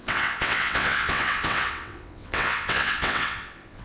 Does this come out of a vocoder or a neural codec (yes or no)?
yes